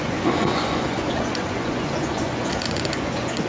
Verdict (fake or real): fake